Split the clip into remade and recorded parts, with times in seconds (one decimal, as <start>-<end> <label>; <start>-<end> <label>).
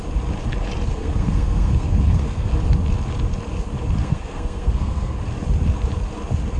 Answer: 0.0-0.9 recorded; 0.9-2.5 remade; 2.5-4.0 recorded; 4.0-5.2 remade; 5.2-6.6 recorded